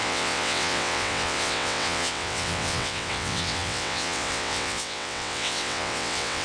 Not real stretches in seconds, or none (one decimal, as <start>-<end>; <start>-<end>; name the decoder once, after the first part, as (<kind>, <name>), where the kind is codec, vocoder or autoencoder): 0.0-6.4 (vocoder, WaveNeXt)